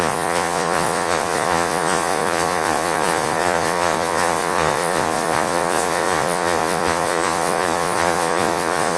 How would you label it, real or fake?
fake